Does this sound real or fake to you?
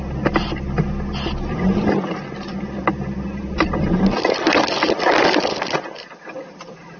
real